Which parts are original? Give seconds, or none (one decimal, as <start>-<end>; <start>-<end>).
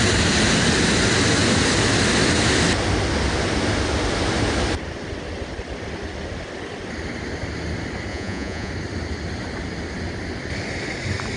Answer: 0.0-8.1; 8.7-11.4